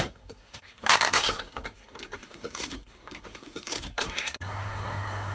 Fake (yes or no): yes